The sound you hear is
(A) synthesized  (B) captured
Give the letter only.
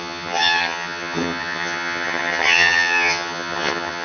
A